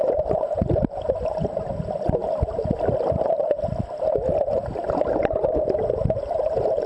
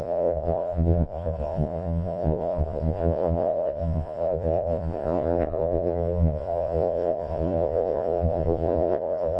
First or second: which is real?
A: first